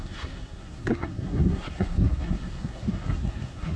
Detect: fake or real fake